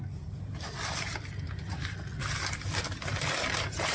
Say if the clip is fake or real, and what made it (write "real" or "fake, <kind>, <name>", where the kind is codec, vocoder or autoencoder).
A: real